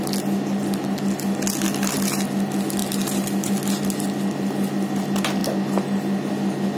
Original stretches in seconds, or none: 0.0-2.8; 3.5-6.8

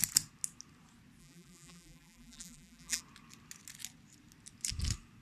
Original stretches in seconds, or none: 0.0-1.2; 3.0-5.2

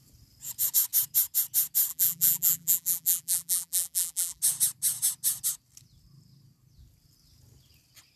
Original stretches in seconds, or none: 0.0-1.9; 4.4-8.2

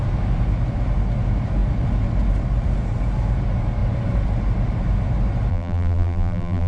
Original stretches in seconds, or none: 0.0-5.5

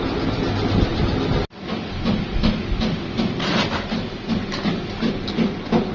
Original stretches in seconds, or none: 0.0-5.9

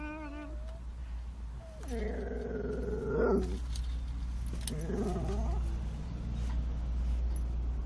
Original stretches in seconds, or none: 0.0-7.9

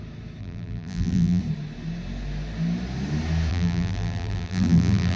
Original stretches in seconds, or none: 0.0-0.4; 1.4-3.5

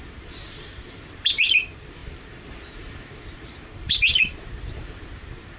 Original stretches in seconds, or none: none